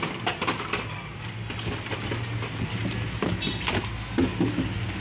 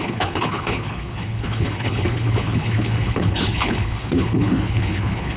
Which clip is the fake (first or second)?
second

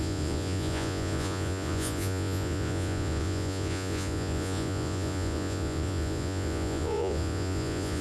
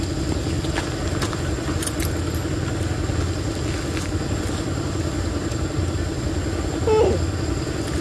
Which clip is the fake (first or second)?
first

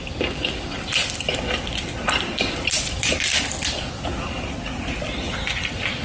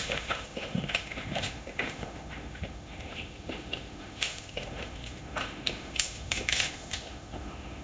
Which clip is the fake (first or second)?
second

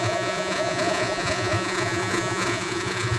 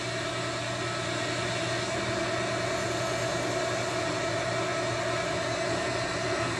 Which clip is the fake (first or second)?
first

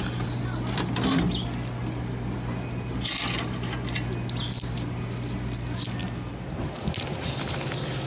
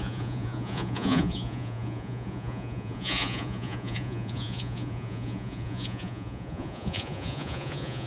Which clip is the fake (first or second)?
second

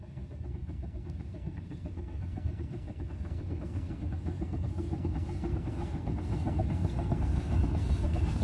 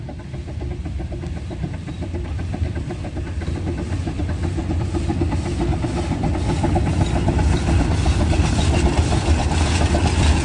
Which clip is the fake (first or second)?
first